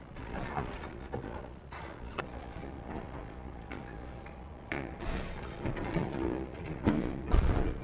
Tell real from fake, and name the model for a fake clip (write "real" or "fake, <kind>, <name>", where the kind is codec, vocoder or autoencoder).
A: fake, vocoder, Vocos